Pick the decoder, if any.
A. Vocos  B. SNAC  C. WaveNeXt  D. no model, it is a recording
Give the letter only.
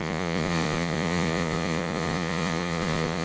A